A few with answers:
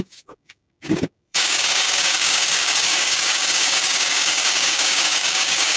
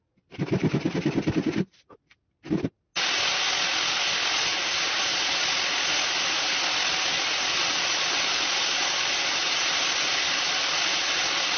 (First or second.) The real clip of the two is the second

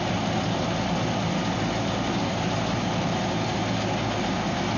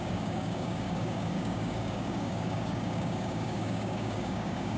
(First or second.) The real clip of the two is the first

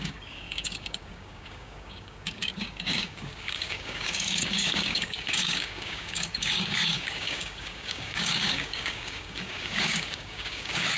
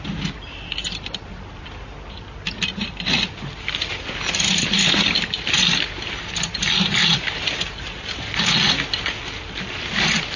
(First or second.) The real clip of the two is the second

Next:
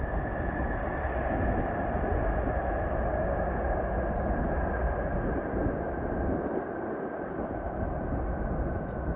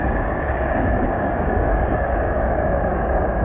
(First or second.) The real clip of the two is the first